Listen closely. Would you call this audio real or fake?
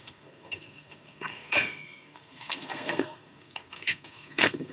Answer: fake